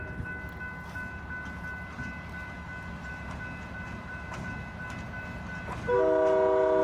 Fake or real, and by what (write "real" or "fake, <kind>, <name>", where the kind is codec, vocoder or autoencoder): real